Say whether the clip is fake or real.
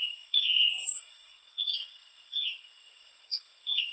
fake